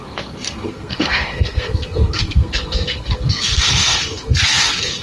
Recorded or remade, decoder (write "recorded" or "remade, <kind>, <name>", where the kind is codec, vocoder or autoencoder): remade, codec, SNAC